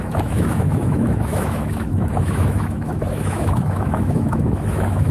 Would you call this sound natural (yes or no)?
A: no